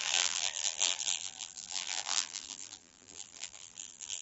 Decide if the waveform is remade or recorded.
remade